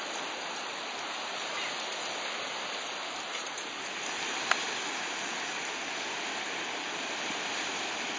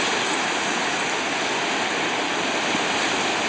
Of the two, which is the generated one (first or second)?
first